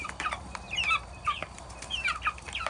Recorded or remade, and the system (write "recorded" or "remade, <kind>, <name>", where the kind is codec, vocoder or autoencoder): remade, vocoder, BigVGAN v2